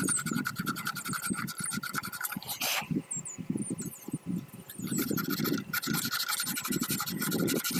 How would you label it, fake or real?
real